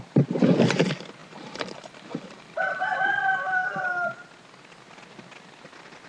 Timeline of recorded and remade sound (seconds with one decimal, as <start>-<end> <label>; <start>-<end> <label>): 0.0-1.2 recorded; 1.2-3.0 remade; 3.0-6.1 recorded

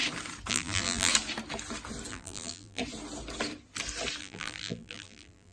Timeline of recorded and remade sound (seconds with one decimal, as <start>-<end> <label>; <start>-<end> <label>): 0.0-0.5 recorded; 0.5-1.1 remade; 1.1-2.1 recorded; 2.1-2.8 remade; 2.8-4.2 recorded; 4.2-5.5 remade

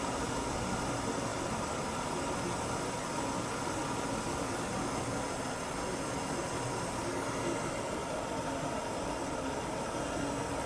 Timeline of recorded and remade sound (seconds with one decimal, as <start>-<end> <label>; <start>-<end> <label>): 0.0-10.7 recorded

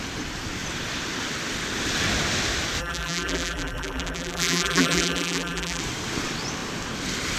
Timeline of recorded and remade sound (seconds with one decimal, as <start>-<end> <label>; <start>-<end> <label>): 0.0-2.8 recorded; 2.8-5.8 remade; 5.8-7.4 recorded